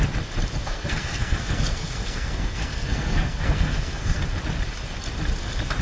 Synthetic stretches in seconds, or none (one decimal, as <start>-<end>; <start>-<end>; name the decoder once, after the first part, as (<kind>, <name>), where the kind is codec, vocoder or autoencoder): 0.7-4.2 (codec, SNAC)